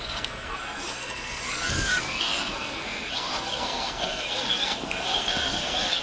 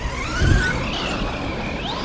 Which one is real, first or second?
second